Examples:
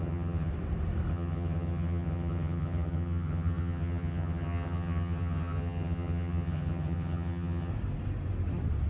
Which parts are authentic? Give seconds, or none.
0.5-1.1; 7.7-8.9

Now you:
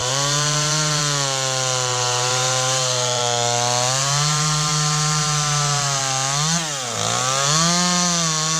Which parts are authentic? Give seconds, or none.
1.0-1.9; 3.2-4.0; 6.0-8.6

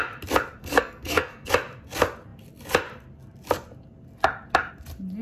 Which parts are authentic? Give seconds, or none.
0.0-0.6; 1.5-5.2

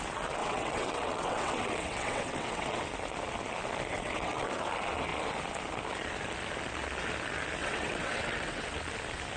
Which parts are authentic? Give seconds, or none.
0.0-0.4; 2.8-3.9; 4.5-7.6; 8.8-9.4

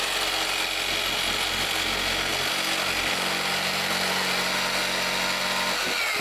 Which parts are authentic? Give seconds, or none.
0.0-6.2

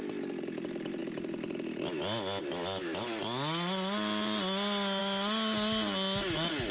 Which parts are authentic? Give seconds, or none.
0.0-6.7